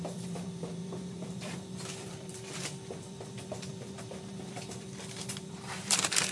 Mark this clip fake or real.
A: fake